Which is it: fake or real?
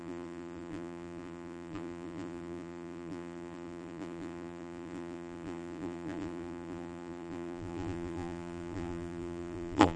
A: fake